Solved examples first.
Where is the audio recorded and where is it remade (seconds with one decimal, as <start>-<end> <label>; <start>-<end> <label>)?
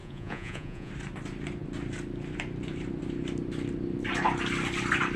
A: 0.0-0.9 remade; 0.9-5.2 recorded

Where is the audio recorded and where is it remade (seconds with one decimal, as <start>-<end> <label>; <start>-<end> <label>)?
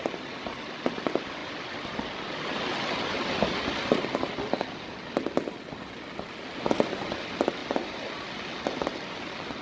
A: 0.0-9.6 recorded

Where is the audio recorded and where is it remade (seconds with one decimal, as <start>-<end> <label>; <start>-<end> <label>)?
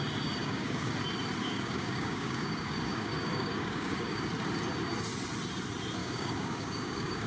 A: 0.0-0.4 recorded; 0.4-0.9 remade; 0.9-1.4 recorded; 1.4-4.3 remade; 4.3-6.0 recorded; 6.0-7.3 remade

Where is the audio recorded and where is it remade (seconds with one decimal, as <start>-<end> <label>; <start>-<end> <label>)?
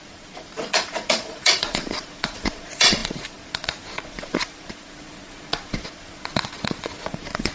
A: 0.0-7.5 remade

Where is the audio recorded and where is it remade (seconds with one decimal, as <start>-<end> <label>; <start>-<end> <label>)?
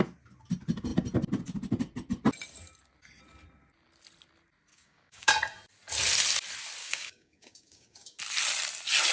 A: 0.0-4.7 recorded; 4.7-5.3 remade; 5.3-6.8 recorded; 6.8-8.2 remade; 8.2-9.1 recorded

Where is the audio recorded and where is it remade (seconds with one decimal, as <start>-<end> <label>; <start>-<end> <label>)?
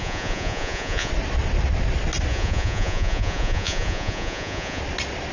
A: 0.0-1.1 remade; 1.1-2.3 recorded; 2.3-4.8 remade; 4.8-5.3 recorded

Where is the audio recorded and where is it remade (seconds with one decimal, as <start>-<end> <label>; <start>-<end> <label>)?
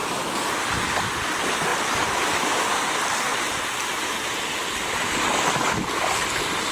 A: 0.0-1.7 recorded; 1.7-2.7 remade; 2.7-6.7 recorded